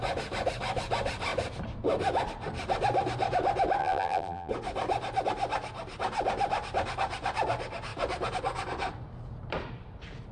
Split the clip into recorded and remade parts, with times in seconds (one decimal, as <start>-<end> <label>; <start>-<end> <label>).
0.0-3.8 recorded; 3.8-4.5 remade; 4.5-10.3 recorded